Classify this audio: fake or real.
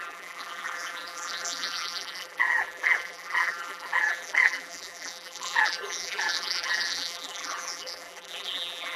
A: fake